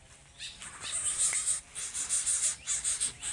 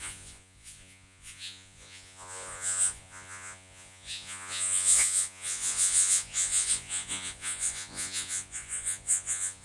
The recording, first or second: first